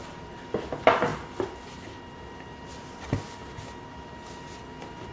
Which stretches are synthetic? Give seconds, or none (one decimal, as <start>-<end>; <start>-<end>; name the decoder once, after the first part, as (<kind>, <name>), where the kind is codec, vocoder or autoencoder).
none

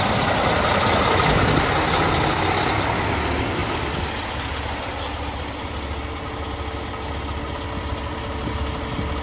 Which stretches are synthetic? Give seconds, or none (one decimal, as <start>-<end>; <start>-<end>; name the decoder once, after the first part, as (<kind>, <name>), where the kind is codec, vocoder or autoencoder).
none

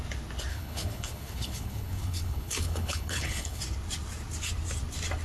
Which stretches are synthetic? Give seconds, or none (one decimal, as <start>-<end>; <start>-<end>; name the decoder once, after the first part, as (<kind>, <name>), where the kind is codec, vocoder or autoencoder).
0.5-3.6 (codec, HILCodec)

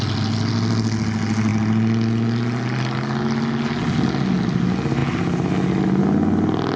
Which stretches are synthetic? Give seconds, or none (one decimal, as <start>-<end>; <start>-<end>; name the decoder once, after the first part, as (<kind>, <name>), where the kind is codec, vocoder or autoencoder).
none

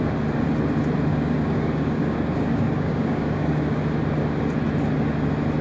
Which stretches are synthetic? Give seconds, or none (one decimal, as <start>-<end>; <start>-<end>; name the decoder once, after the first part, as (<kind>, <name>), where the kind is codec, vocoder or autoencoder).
1.1-3.8 (codec, DAC)